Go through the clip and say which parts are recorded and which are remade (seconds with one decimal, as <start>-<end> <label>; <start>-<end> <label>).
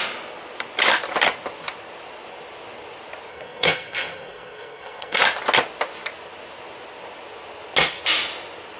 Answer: 0.0-3.3 recorded; 3.3-5.2 remade; 5.2-8.8 recorded